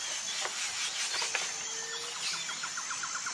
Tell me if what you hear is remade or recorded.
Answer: recorded